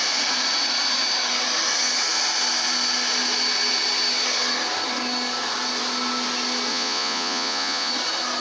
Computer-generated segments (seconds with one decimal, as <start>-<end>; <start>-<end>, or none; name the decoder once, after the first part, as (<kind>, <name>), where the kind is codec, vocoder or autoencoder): 6.7-7.9 (vocoder, Vocos)